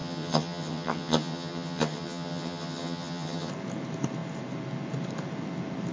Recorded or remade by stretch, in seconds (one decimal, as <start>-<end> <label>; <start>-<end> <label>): 0.0-3.5 remade; 3.5-5.9 recorded